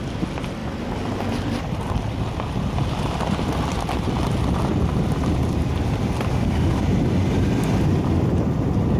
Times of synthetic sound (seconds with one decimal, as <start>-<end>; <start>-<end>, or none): 6.3-6.8